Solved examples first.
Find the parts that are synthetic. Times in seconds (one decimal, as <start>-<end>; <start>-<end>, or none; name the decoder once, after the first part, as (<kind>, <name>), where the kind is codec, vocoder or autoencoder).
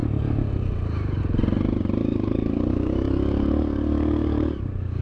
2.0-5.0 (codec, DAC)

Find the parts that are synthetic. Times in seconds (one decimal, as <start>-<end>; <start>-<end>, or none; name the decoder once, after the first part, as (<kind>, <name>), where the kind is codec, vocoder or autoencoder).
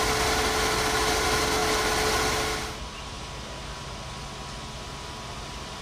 none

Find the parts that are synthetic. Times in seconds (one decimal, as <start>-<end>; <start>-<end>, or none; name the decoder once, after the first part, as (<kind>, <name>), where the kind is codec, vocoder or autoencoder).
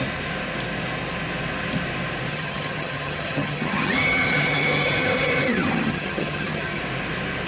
2.3-6.8 (vocoder, HiFi-GAN)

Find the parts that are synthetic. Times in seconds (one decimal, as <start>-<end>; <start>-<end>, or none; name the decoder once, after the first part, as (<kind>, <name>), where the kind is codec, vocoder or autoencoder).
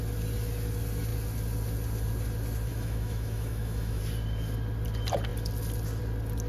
2.7-4.0 (autoencoder, DAC-VAE)